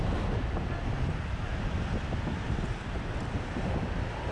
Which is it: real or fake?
real